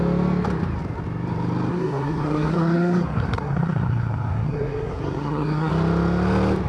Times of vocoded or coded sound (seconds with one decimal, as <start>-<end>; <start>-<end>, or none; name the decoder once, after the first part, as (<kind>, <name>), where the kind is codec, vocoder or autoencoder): 1.7-5.7 (codec, SNAC)